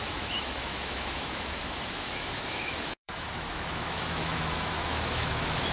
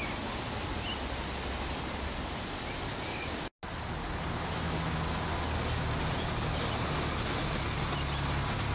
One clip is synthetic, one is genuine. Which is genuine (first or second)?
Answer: second